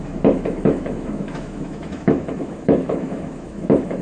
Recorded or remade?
remade